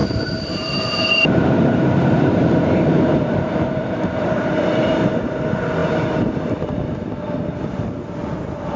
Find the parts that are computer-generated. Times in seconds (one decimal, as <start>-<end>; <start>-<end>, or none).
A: 0.0-5.2